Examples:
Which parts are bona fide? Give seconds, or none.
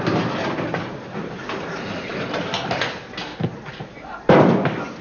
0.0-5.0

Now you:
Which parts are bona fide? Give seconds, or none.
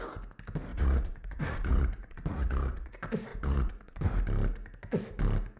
0.0-0.7; 2.9-3.3; 4.0-5.6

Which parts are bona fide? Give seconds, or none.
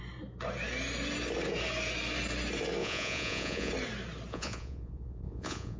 0.0-2.8; 3.7-4.3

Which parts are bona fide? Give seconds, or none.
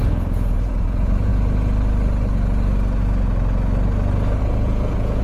1.3-4.4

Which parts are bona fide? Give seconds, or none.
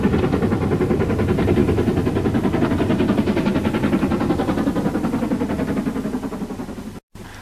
0.0-7.4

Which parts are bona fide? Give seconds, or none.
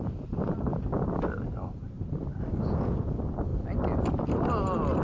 0.0-5.0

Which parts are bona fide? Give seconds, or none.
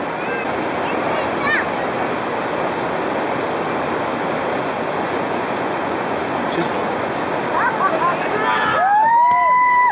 0.0-4.6; 7.4-9.9